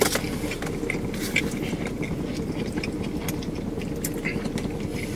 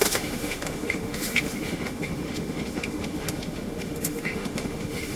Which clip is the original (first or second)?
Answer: first